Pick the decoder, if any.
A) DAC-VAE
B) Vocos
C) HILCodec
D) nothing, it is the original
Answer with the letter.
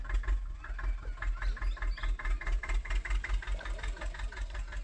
D